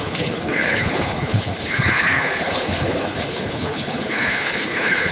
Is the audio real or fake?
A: fake